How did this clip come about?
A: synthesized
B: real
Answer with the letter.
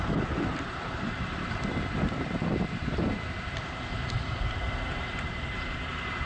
A